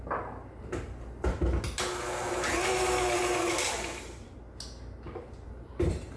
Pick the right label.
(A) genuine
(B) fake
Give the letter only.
A